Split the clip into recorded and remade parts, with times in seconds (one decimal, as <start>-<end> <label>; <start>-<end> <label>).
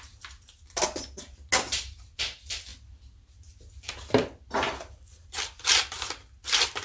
0.0-6.8 recorded